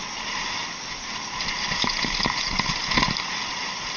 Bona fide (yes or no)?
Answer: yes